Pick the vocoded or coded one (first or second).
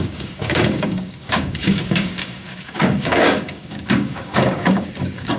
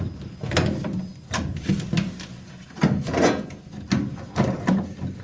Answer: first